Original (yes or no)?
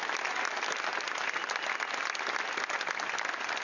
yes